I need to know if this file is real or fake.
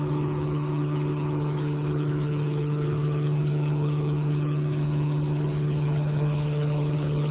fake